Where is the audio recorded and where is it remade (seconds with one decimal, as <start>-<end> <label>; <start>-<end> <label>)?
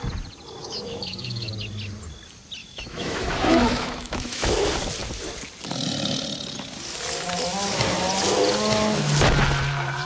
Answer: 0.0-0.6 recorded; 0.6-1.5 remade; 1.5-2.6 recorded; 2.6-4.5 remade; 4.5-10.1 recorded